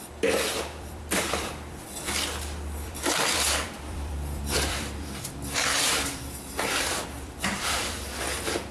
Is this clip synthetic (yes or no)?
yes